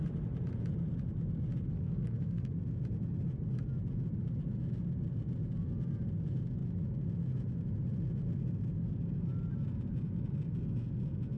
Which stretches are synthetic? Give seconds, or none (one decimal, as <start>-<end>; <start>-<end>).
1.7-2.5